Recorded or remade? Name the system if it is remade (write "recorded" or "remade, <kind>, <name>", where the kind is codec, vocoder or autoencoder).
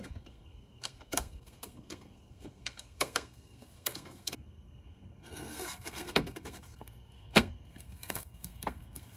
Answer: remade, codec, SNAC